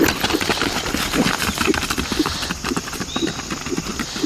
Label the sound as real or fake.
real